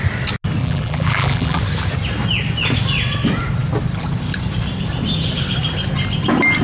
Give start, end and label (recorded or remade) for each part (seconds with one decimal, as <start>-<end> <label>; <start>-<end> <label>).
0.0-0.6 recorded; 0.6-1.6 remade; 1.6-6.6 recorded